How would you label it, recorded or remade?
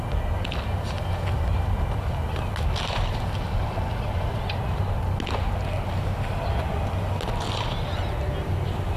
recorded